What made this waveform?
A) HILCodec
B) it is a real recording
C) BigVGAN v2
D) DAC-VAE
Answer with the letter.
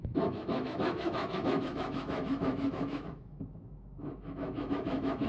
D